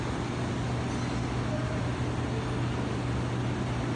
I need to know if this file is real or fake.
real